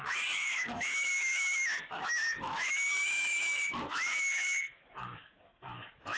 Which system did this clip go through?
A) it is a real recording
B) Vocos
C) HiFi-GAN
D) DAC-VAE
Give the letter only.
D